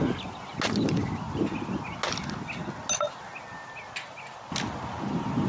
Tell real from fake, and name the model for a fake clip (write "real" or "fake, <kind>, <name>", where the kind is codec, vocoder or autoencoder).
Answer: real